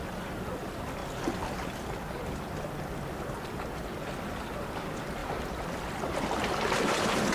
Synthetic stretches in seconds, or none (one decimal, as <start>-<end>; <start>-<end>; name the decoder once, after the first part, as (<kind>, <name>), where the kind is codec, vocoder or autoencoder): none